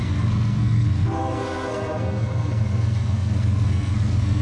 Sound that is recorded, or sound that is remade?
remade